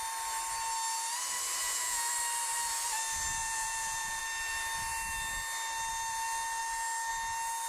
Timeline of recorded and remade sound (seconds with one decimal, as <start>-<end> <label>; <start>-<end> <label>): 0.0-1.6 recorded; 1.6-2.1 remade; 2.1-3.4 recorded; 3.4-4.2 remade; 4.2-7.7 recorded